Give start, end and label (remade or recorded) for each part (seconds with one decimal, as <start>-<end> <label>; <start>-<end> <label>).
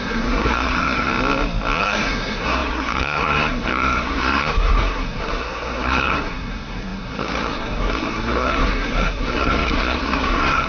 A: 0.0-1.1 remade; 1.1-1.8 recorded; 1.8-10.7 remade